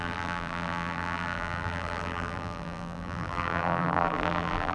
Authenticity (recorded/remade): remade